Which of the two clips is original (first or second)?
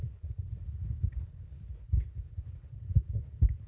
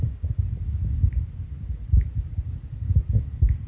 second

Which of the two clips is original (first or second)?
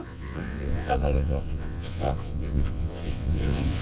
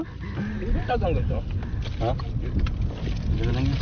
second